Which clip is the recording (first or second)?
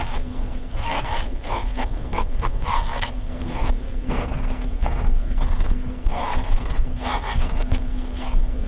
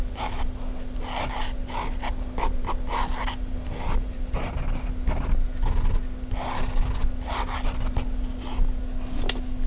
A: second